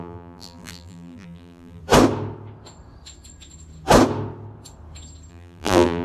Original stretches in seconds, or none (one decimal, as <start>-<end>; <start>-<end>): 1.8-5.3